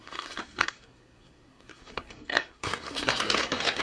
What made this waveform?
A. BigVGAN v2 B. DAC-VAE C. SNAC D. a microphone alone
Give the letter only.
C